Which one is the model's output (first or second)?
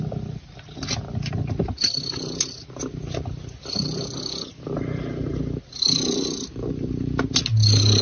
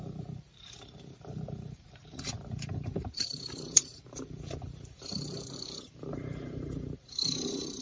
second